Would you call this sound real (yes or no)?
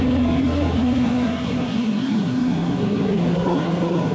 no